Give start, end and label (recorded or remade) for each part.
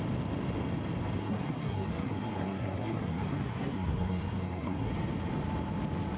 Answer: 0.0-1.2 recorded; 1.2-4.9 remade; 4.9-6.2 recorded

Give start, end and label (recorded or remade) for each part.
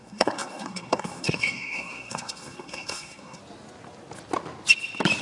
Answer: 0.0-3.4 remade; 3.4-5.2 recorded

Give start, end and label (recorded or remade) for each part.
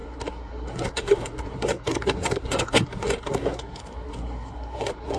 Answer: 0.0-5.2 remade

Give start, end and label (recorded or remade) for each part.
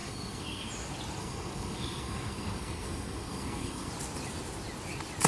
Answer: 0.0-0.7 remade; 0.7-1.2 recorded; 1.2-3.9 remade; 3.9-5.3 recorded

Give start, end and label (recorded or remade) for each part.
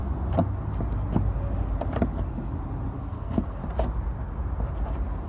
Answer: 0.0-3.0 recorded; 3.0-3.6 remade; 3.6-5.3 recorded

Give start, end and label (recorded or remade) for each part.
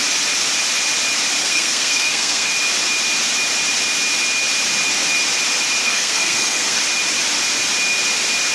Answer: 0.0-1.4 recorded; 1.4-2.5 remade; 2.5-5.8 recorded; 5.8-6.8 remade; 6.8-8.5 recorded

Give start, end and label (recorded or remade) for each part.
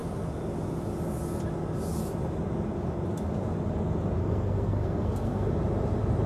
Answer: 0.0-4.2 recorded; 4.2-5.5 remade; 5.5-6.3 recorded